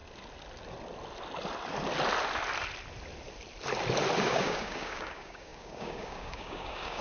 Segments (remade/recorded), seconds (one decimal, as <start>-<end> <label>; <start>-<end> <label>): 0.0-4.2 recorded; 4.2-7.0 remade